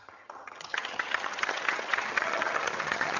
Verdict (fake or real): fake